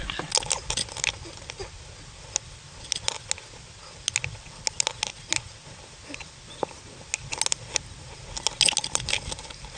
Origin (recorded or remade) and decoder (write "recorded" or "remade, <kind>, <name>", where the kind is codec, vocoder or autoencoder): recorded